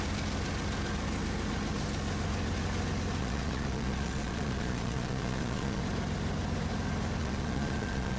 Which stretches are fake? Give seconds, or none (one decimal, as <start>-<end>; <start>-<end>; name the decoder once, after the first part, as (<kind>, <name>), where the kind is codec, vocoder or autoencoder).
3.2-5.8 (vocoder, Vocos); 7.2-8.2